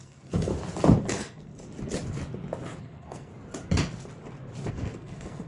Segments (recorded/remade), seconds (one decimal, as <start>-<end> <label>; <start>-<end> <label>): 0.0-0.5 remade; 0.5-1.1 recorded; 1.1-1.5 remade; 1.5-2.8 recorded; 2.8-3.3 remade; 3.3-4.7 recorded; 4.7-5.5 remade